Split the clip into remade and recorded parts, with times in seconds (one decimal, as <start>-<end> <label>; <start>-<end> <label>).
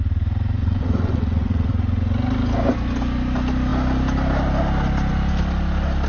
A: 0.0-0.6 recorded; 0.6-1.7 remade; 1.7-6.1 recorded